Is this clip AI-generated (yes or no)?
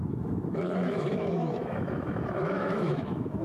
yes